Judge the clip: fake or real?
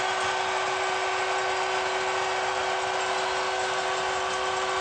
real